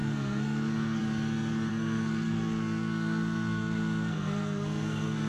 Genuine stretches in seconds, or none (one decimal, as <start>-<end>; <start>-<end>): 1.0-1.7